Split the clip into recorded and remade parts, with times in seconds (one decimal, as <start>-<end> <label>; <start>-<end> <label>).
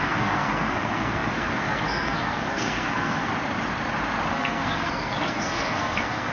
0.0-3.3 remade; 3.3-4.3 recorded; 4.3-6.3 remade